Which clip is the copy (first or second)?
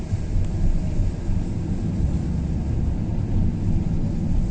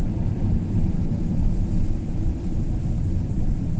second